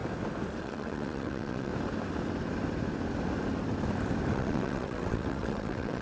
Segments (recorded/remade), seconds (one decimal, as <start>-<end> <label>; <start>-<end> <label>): 0.0-0.6 recorded; 0.6-1.7 remade; 1.7-4.3 recorded; 4.3-6.0 remade